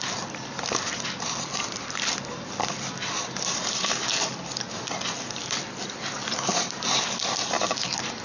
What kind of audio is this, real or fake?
real